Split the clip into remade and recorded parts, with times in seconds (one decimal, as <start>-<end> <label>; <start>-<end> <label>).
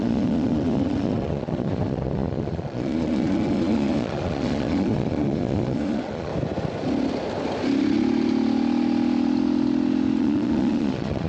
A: 0.0-6.3 remade; 6.3-10.2 recorded; 10.2-11.3 remade